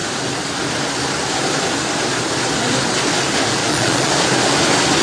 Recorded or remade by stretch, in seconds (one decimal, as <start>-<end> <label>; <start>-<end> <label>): 0.0-3.6 recorded; 3.6-4.1 remade; 4.1-5.0 recorded